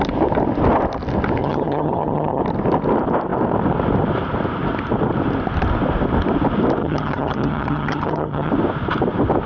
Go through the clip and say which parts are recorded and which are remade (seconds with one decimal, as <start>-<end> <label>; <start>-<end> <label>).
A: 0.0-1.4 recorded; 1.4-2.4 remade; 2.4-6.8 recorded; 6.8-8.5 remade; 8.5-9.5 recorded